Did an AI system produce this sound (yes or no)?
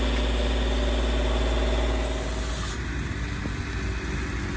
no